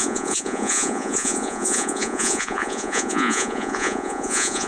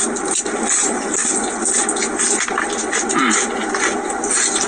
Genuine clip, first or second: second